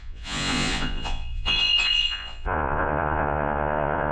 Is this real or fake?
fake